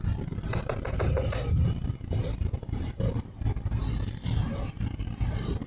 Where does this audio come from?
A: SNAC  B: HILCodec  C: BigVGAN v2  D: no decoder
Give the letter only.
D